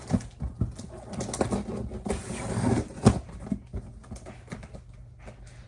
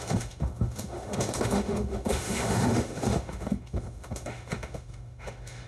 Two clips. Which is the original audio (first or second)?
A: first